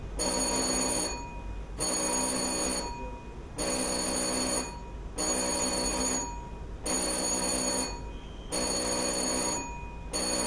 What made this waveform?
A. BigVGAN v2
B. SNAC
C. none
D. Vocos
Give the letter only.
C